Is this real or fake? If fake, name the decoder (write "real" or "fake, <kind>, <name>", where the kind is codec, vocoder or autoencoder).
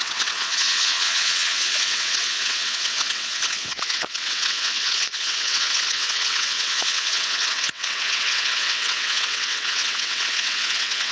fake, vocoder, WaveNeXt